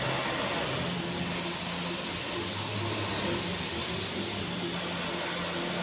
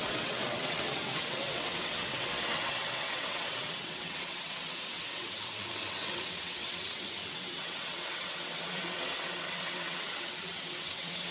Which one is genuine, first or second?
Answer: first